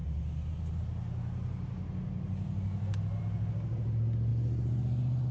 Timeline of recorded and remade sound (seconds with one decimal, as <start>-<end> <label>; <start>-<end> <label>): 0.0-5.3 recorded